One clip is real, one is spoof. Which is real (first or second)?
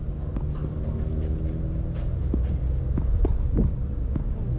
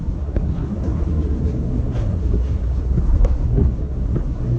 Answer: first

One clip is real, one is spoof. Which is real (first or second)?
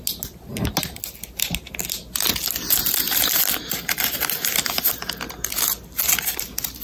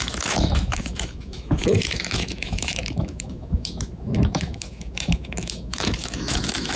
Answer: first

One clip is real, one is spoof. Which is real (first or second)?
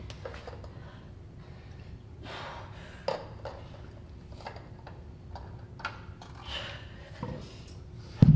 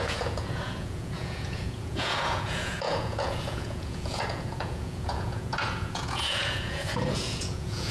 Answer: first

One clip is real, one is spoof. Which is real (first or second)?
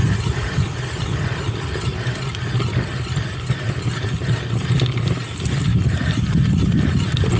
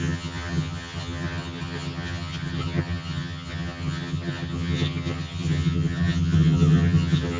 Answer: first